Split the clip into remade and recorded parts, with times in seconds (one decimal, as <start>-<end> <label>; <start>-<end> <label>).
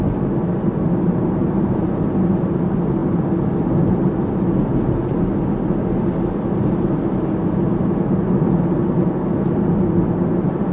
0.0-1.4 recorded; 1.4-2.0 remade; 2.0-10.7 recorded